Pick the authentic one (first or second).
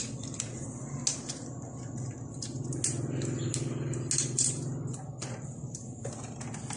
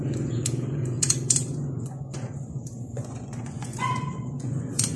first